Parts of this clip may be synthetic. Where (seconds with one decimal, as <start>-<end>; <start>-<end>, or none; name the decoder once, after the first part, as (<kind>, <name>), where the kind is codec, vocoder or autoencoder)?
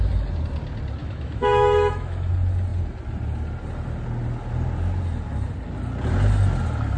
1.0-2.3 (autoencoder, DAC-VAE)